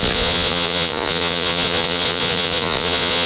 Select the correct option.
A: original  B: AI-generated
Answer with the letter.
B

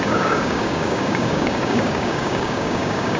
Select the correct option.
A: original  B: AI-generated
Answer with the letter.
B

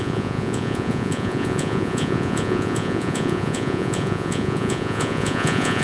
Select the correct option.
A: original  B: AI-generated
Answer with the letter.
B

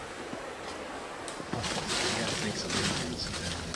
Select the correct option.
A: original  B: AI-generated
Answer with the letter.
A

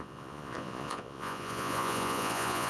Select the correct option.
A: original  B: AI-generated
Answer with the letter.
B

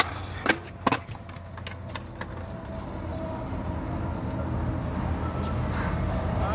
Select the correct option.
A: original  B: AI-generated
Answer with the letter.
A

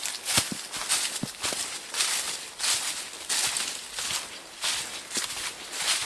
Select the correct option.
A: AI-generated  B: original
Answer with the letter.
B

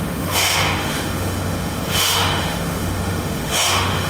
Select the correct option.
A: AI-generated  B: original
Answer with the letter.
A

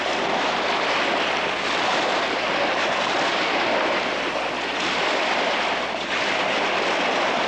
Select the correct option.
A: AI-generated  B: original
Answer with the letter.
A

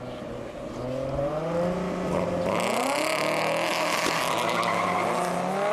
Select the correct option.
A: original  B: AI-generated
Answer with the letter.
A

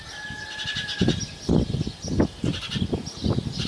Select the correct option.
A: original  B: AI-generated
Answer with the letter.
A